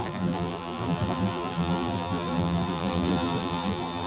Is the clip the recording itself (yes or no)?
no